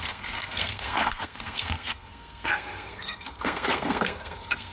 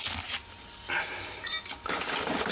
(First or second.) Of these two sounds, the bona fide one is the second